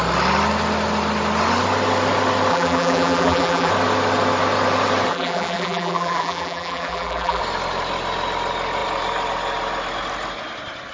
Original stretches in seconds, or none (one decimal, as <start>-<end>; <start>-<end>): 0.0-2.5; 3.7-5.1; 7.4-10.9